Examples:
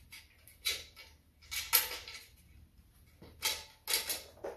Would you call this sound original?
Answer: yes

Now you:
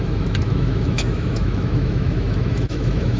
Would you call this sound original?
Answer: no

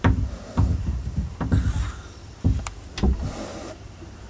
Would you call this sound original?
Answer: no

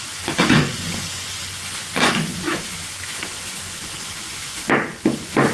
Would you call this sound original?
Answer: no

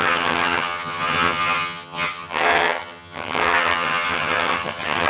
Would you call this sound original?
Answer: no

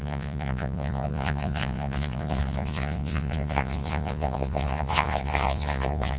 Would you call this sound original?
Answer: no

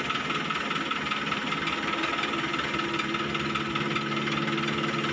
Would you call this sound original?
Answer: yes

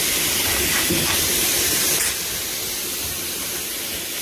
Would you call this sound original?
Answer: yes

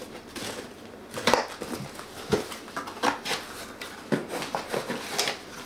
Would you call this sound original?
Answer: yes